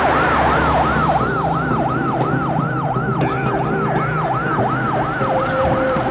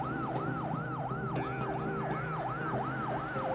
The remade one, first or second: first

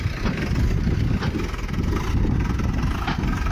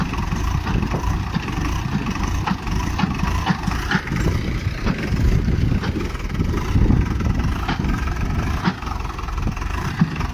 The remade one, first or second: second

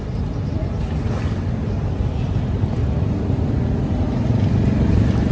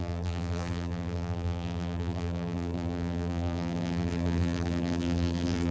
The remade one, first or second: second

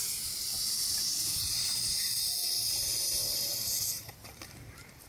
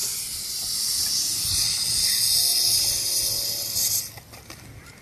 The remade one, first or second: first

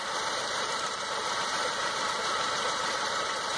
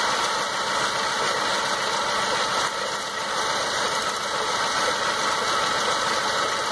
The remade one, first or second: first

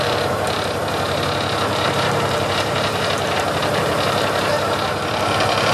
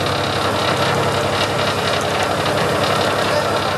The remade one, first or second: first